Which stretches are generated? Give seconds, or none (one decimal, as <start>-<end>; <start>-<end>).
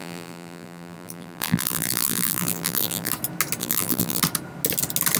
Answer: 0.0-3.1; 3.6-4.2